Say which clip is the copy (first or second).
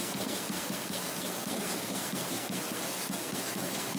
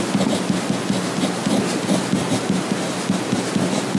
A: first